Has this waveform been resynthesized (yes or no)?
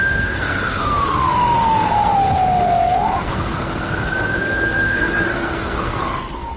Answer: yes